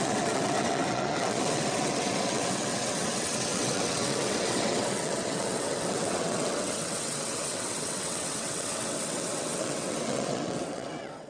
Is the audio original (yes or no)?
no